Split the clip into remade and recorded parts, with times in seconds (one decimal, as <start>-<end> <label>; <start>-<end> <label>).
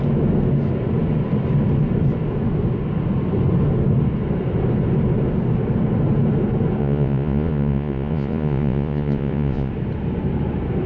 0.0-6.8 recorded; 6.8-9.7 remade; 9.7-10.9 recorded